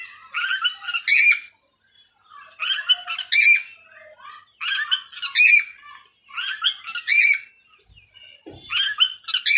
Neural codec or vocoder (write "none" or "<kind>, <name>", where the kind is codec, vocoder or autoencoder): none